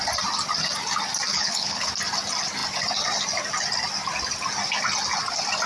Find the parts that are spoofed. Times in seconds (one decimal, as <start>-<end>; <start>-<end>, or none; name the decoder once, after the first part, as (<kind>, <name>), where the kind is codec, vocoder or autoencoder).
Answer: 1.3-1.9 (codec, HILCodec)